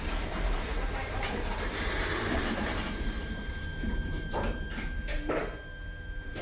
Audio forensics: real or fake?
fake